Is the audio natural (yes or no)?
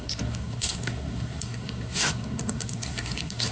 no